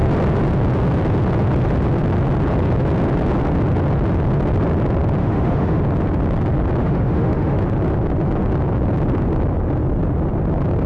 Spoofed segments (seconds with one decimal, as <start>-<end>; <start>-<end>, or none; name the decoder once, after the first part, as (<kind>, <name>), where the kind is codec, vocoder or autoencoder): 5.2-5.8 (autoencoder, DAC-VAE); 6.8-7.6